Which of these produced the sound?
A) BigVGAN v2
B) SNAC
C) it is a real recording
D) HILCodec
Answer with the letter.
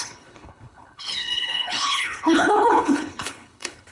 D